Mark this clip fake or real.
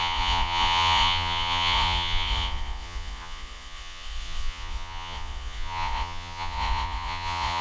fake